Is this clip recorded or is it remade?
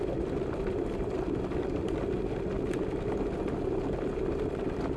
recorded